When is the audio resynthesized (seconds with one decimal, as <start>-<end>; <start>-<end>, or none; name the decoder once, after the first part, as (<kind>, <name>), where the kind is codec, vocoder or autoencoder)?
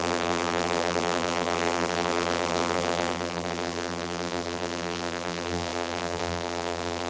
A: 0.0-7.1 (vocoder, BigVGAN v2)